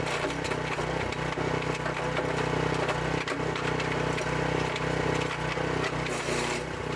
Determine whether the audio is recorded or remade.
recorded